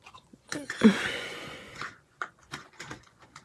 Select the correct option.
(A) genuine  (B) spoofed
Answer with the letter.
B